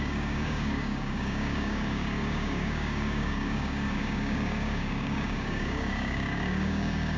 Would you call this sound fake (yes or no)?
yes